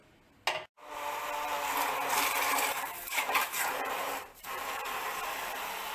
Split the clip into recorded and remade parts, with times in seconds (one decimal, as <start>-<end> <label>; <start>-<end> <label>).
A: 0.0-2.5 recorded; 2.5-5.1 remade; 5.1-5.9 recorded

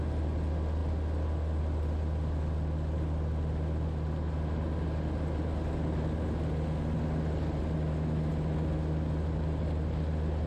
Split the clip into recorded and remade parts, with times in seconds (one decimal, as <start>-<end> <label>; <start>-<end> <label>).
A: 0.0-10.5 recorded

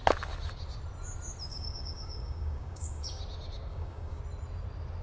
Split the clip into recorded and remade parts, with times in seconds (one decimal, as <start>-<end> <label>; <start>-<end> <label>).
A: 0.0-1.5 recorded; 1.5-3.2 remade; 3.2-3.7 recorded; 3.7-4.2 remade; 4.2-5.0 recorded